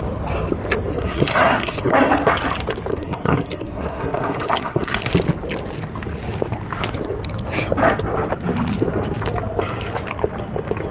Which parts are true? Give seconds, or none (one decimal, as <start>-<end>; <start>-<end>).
0.0-0.9; 2.0-2.9; 5.1-10.9